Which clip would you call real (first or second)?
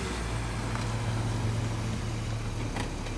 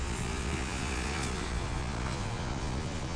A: first